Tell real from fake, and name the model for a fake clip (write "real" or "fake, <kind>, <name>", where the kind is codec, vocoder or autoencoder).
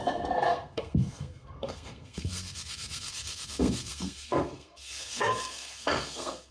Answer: fake, codec, SNAC